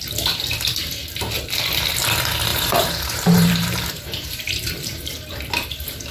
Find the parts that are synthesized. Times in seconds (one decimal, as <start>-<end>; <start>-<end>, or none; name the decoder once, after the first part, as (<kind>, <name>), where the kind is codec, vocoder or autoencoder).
2.5-5.3 (vocoder, BigVGAN v2)